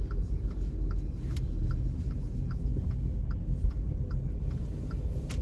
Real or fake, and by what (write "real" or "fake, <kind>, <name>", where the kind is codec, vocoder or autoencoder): real